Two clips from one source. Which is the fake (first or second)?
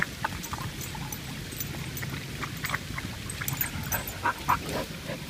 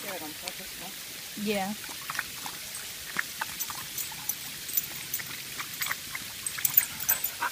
second